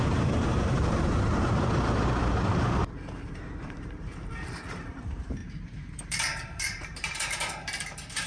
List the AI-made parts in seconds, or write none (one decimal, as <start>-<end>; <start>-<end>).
0.0-2.8; 3.3-8.3